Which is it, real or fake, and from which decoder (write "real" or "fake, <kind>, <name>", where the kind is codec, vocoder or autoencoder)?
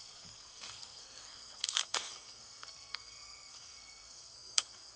fake, codec, SNAC